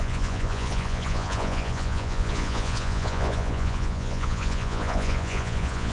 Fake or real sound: fake